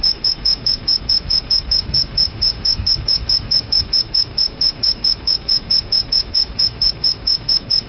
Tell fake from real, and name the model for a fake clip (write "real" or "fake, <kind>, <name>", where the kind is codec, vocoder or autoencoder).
fake, autoencoder, DAC-VAE